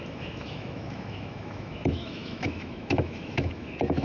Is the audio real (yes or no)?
no